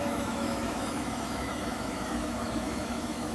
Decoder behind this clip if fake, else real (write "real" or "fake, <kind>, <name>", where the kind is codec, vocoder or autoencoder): fake, autoencoder, DAC-VAE